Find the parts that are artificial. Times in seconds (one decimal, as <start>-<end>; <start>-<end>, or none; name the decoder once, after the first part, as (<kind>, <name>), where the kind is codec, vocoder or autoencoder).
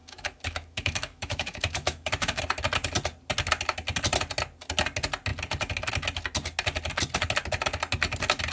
0.0-2.4 (autoencoder, DAC-VAE)